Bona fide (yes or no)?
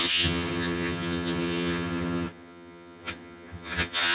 no